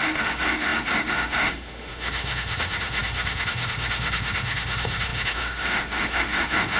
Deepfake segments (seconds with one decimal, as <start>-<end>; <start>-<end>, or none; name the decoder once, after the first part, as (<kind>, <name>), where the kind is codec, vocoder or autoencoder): 0.0-6.8 (autoencoder, DAC-VAE)